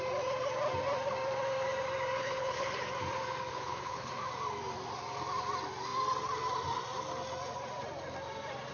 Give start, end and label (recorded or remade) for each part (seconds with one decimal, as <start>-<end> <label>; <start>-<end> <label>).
0.0-2.2 recorded; 2.2-2.8 remade; 2.8-3.5 recorded; 3.5-4.1 remade; 4.1-8.7 recorded